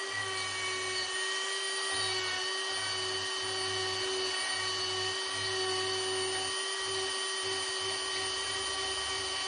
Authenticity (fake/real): real